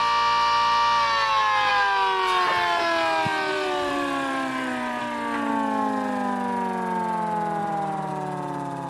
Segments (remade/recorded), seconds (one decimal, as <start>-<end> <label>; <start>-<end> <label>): 0.0-3.5 recorded; 3.5-5.0 remade; 5.0-7.6 recorded; 7.6-8.1 remade; 8.1-8.9 recorded